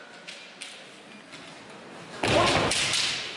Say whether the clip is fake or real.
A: real